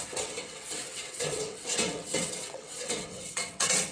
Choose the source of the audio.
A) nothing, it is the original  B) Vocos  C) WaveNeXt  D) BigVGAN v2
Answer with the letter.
C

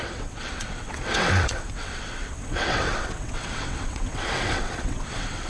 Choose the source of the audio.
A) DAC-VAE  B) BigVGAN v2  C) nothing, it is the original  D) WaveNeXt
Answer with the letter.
D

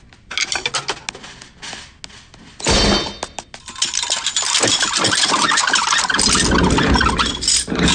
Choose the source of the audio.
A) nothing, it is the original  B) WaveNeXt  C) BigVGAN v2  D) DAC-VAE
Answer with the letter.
A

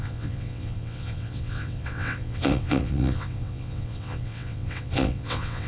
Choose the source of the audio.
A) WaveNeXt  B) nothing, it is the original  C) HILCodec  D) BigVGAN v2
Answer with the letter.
A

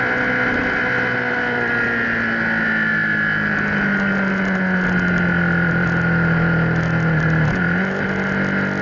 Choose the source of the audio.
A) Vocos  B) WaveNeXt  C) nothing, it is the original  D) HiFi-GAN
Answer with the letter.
C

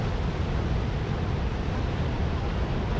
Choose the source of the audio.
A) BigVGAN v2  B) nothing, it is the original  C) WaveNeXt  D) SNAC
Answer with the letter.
B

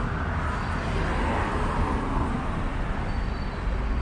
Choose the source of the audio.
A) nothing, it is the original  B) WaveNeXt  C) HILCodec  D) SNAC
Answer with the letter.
A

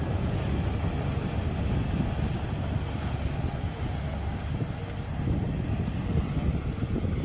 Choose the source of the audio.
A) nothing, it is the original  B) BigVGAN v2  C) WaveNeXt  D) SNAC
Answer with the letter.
A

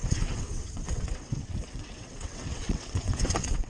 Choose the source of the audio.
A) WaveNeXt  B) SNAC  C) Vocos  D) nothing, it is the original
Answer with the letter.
A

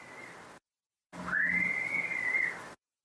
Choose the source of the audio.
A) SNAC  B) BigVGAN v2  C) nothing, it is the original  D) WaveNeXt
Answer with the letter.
C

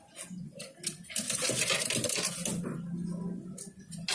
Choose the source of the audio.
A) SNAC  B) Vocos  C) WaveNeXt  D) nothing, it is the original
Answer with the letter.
D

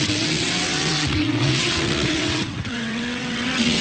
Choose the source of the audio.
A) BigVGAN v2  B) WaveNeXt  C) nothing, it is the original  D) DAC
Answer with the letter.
B